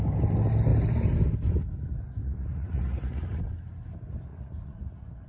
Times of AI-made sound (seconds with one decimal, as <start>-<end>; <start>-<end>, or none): 2.2-3.4; 4.3-5.3